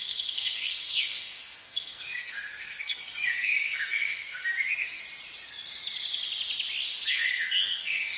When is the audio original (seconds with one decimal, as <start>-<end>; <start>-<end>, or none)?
5.0-7.0